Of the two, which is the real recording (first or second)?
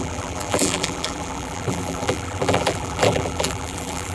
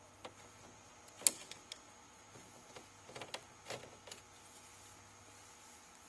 second